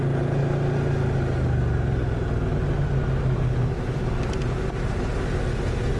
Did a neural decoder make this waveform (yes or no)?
no